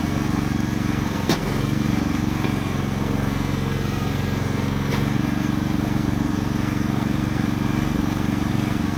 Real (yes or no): no